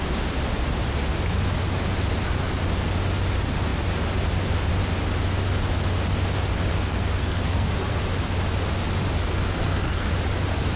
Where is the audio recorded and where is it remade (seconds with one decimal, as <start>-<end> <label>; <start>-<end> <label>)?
0.0-6.7 recorded; 6.7-8.0 remade; 8.0-9.6 recorded; 9.6-10.1 remade; 10.1-10.8 recorded